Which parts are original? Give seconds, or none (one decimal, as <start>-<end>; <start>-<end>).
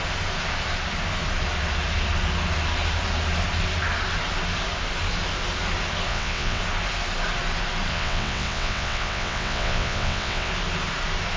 0.0-6.1; 6.6-7.9; 10.5-11.4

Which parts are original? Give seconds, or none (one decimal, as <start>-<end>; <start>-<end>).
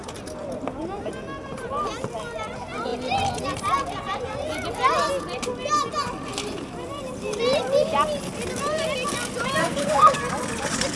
0.0-9.6; 10.2-11.0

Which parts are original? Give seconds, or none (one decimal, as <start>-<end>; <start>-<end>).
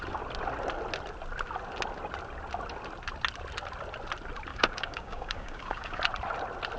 0.0-4.5; 6.0-6.8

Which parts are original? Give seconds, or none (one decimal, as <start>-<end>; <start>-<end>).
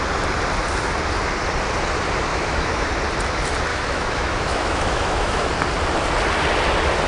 0.0-2.3; 2.9-3.7; 5.5-7.1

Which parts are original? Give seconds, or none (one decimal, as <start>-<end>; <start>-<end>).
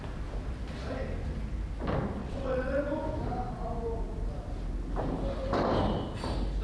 0.0-2.2; 2.8-6.6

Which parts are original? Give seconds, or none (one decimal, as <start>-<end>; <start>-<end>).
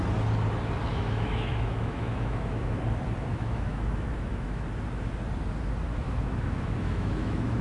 0.0-0.9; 2.8-3.3; 4.6-5.9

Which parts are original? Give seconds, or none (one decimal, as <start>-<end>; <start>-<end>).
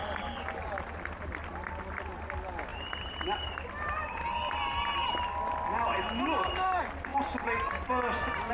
0.0-8.5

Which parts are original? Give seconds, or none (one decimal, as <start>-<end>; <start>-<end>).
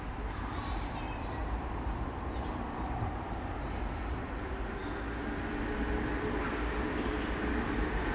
0.0-1.4; 4.3-8.1